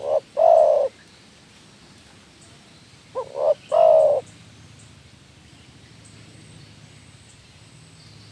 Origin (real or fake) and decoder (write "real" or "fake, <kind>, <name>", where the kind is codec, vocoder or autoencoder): real